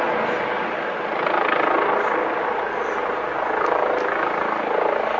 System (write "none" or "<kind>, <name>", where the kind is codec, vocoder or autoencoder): none